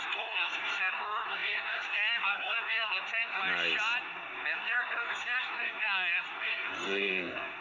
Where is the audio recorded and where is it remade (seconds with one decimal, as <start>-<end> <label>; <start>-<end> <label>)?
0.0-3.4 remade; 3.4-4.0 recorded; 4.0-7.6 remade